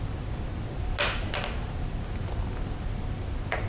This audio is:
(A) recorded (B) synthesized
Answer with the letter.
A